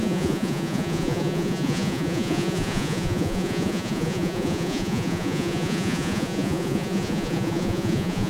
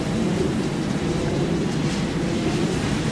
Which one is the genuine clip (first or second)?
second